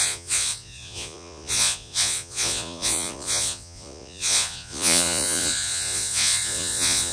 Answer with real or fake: fake